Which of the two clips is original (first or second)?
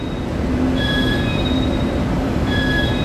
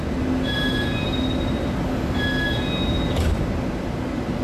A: second